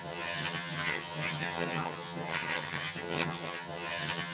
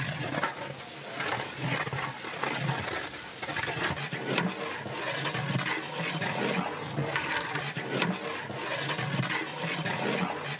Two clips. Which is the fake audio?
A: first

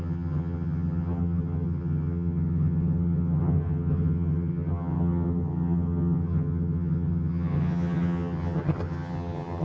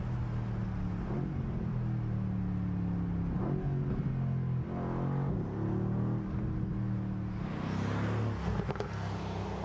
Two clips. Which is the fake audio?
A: first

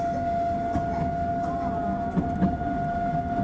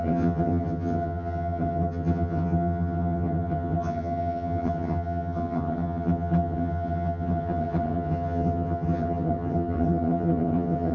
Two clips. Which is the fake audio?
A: second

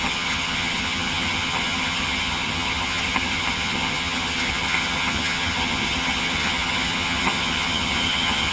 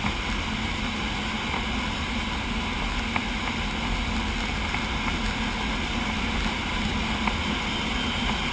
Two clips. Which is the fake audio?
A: first